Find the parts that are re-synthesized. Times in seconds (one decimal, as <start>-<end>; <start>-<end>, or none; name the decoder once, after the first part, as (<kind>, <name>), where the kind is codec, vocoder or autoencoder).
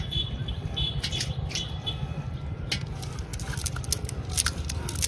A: none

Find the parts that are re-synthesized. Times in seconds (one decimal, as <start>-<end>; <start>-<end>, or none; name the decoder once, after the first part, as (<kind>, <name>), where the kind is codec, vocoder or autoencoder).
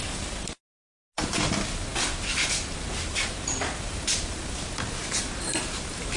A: none